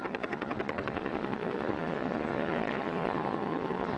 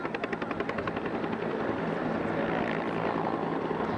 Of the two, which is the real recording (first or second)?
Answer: second